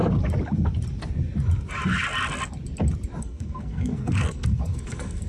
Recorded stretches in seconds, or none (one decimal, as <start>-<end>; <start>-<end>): 0.0-3.2